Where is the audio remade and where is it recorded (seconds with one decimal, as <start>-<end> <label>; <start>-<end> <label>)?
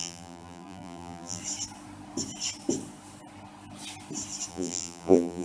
0.0-1.4 remade; 1.4-4.5 recorded; 4.5-5.4 remade